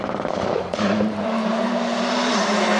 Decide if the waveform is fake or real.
fake